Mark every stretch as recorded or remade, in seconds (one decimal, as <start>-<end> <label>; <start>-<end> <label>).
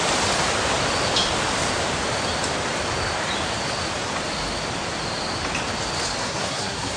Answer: 0.0-6.2 recorded; 6.2-7.0 remade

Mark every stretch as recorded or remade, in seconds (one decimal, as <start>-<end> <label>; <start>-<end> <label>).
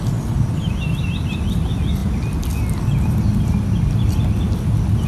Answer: 0.0-5.1 recorded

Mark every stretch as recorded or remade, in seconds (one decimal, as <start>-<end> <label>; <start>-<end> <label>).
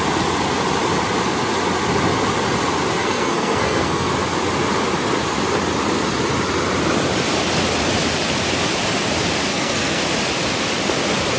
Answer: 0.0-3.0 recorded; 3.0-4.1 remade; 4.1-9.5 recorded; 9.5-10.0 remade; 10.0-11.4 recorded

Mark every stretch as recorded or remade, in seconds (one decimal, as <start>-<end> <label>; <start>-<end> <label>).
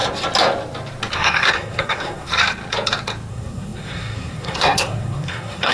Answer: 0.0-1.1 recorded; 1.1-2.3 remade; 2.3-3.3 recorded; 3.3-5.7 remade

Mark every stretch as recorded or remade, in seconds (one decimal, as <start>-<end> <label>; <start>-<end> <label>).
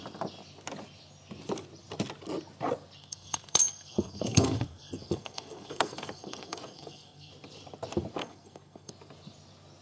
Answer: 0.0-3.0 recorded; 3.0-7.3 remade; 7.3-8.2 recorded; 8.2-8.9 remade; 8.9-9.8 recorded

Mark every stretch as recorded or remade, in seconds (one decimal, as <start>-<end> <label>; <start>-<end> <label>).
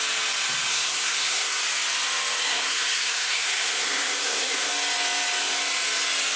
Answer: 0.0-0.7 recorded; 0.7-1.6 remade; 1.6-2.5 recorded; 2.5-4.7 remade; 4.7-6.4 recorded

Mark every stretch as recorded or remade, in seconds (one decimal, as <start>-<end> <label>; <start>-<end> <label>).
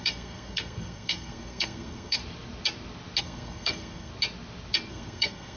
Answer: 0.0-2.2 remade; 2.2-3.2 recorded; 3.2-4.1 remade; 4.1-4.9 recorded; 4.9-5.6 remade